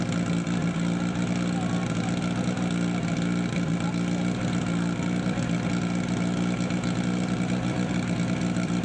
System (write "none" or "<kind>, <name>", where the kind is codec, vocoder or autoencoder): none